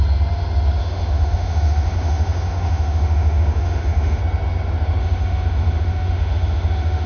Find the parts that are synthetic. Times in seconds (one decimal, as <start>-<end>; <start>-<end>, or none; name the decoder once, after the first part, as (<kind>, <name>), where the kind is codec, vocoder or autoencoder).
0.8-4.2 (autoencoder, DAC-VAE); 5.0-7.1